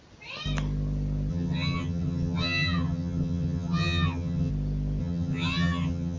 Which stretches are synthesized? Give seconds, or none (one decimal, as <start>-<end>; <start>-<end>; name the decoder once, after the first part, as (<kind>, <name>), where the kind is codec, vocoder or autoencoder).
1.3-4.5 (vocoder, HiFi-GAN); 5.0-6.2